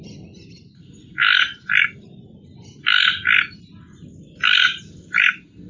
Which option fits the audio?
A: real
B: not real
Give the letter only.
A